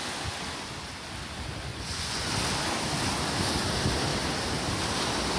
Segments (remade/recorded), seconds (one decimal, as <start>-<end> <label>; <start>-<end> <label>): 0.0-1.7 recorded; 1.7-2.3 remade; 2.3-5.4 recorded